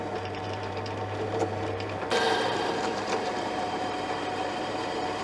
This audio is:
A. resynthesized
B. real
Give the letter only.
A